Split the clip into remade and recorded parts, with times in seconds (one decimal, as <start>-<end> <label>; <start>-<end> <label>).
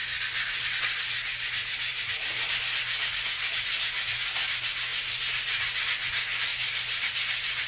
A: 0.0-1.9 recorded; 1.9-2.6 remade; 2.6-4.9 recorded; 4.9-5.4 remade; 5.4-6.5 recorded; 6.5-7.1 remade; 7.1-7.7 recorded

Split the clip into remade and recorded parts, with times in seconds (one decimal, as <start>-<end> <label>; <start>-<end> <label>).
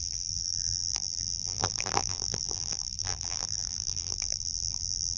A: 0.0-5.2 remade